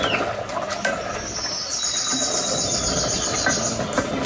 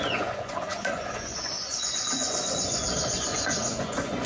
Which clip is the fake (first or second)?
second